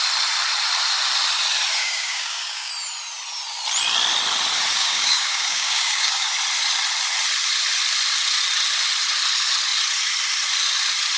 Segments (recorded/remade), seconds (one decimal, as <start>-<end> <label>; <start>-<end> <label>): 0.0-1.8 recorded; 1.8-2.7 remade; 2.7-4.7 recorded; 4.7-6.3 remade; 6.3-11.2 recorded